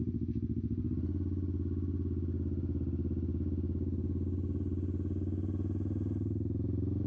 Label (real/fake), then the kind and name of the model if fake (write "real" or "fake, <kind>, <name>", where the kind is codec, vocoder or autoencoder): real